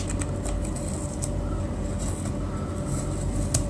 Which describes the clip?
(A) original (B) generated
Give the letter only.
A